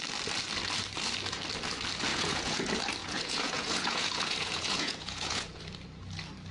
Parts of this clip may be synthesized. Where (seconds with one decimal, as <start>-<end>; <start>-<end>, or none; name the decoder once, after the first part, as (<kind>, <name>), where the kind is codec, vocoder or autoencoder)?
2.1-2.6 (vocoder, Vocos); 3.0-5.6